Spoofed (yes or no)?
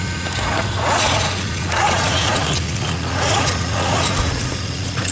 yes